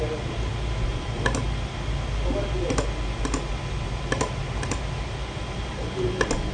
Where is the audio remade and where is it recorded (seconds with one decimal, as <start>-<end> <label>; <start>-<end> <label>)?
0.0-6.5 recorded